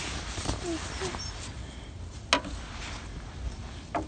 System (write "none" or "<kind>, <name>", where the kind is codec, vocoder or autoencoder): none